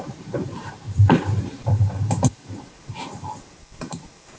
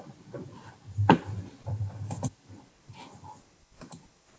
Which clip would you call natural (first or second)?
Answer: second